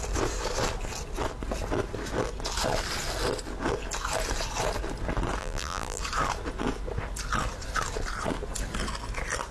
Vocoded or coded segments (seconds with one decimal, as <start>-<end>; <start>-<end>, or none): 5.4-6.0